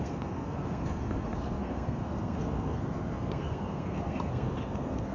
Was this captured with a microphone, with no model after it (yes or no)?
no